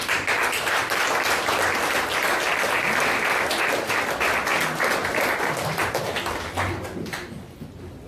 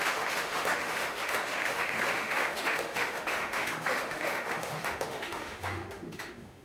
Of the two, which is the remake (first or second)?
second